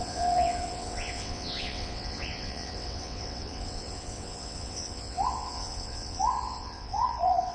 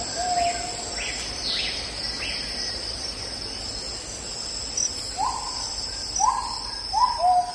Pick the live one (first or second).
second